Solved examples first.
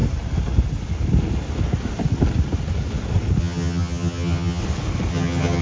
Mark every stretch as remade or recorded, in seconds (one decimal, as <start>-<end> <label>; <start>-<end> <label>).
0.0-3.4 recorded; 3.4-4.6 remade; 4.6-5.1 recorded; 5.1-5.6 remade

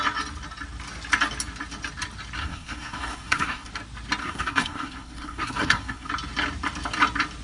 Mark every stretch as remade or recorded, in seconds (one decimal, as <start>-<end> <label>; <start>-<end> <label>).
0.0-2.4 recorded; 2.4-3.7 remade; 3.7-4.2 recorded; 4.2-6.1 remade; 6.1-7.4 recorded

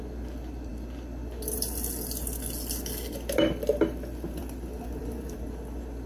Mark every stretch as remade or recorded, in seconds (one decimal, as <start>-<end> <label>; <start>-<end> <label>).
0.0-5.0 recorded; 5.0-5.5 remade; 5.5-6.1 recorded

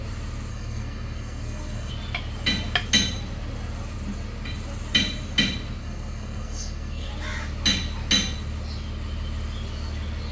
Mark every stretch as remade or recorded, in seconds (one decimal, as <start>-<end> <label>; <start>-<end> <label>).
0.0-0.5 recorded; 0.5-1.9 remade; 1.9-5.8 recorded; 5.8-7.1 remade; 7.1-10.3 recorded

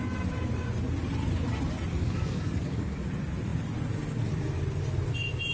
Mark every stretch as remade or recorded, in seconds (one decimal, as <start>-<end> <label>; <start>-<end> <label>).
0.0-2.0 recorded; 2.0-3.0 remade; 3.0-5.5 recorded

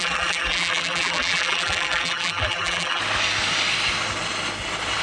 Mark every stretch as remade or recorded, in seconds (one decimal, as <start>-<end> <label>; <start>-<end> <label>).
0.0-3.0 remade; 3.0-5.0 recorded

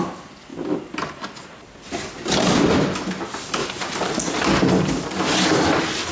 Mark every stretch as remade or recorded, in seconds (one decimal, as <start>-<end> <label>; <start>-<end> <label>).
0.0-3.6 recorded; 3.6-4.2 remade; 4.2-6.1 recorded